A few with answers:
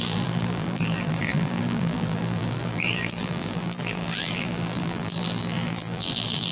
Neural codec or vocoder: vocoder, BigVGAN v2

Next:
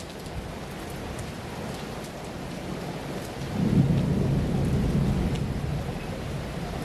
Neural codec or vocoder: none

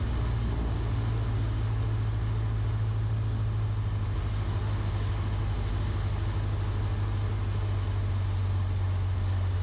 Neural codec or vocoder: none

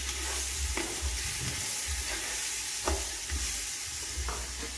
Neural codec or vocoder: none